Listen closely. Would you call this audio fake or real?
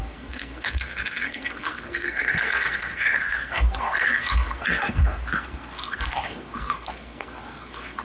fake